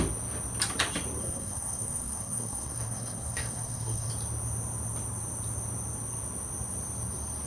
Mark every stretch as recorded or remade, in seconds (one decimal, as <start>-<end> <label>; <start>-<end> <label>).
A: 0.0-1.2 recorded; 1.2-4.1 remade; 4.1-7.5 recorded